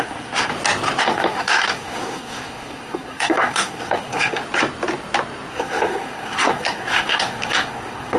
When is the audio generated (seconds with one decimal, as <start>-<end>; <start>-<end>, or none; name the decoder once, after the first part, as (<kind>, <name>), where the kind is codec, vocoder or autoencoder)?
0.0-0.5 (codec, SNAC); 1.0-4.4; 5.5-8.2